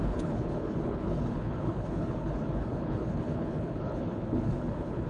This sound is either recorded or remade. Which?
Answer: remade